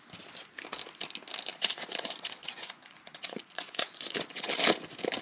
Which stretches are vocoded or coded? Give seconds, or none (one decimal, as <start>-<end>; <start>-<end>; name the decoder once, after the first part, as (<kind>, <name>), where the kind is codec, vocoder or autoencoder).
1.5-4.5 (vocoder, Vocos)